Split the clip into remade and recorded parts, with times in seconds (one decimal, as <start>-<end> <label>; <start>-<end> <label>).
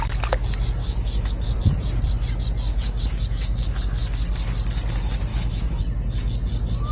0.0-0.8 recorded; 0.8-1.3 remade; 1.3-2.7 recorded; 2.7-3.8 remade; 3.8-5.3 recorded; 5.3-5.8 remade; 5.8-6.9 recorded